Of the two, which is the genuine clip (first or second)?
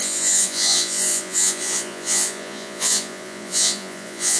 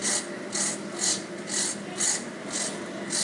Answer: second